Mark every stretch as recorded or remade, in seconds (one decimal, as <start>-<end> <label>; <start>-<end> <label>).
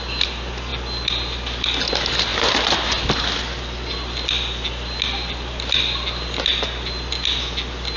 0.0-8.0 recorded